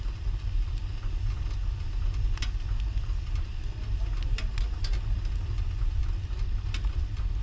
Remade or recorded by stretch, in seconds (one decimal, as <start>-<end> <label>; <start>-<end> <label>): 0.0-7.4 recorded